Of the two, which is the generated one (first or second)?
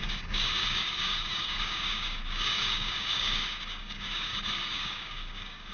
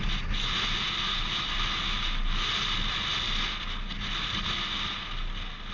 first